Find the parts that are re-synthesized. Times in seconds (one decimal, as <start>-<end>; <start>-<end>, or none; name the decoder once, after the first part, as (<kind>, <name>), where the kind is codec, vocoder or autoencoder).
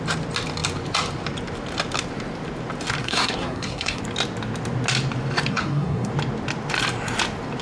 3.0-4.0 (codec, SNAC); 5.5-6.1